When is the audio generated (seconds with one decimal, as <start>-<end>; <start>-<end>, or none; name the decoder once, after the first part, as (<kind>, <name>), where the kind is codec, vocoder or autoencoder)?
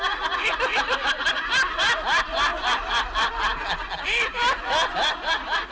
none